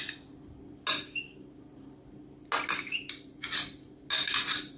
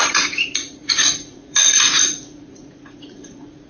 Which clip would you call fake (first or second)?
second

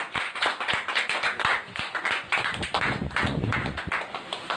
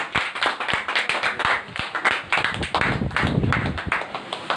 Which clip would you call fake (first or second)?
first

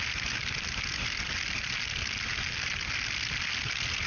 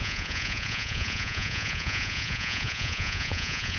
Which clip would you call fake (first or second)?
second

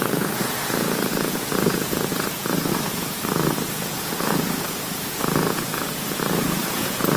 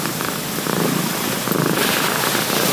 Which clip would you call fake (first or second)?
first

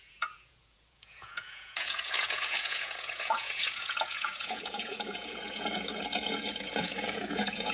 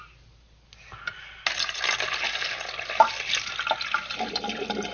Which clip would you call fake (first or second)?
first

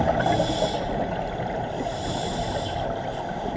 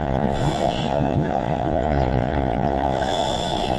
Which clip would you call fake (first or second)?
second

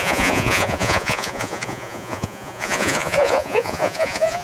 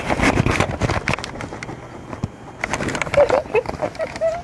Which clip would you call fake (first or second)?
first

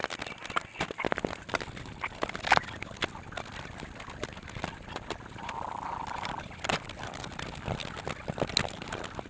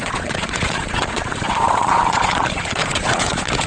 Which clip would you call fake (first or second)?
second